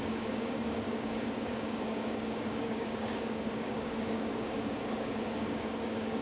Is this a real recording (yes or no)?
no